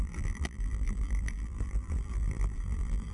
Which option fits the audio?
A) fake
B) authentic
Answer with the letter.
A